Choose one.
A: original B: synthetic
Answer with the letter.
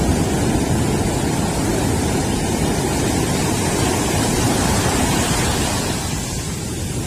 A